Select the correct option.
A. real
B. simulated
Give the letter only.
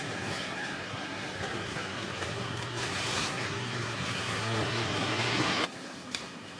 B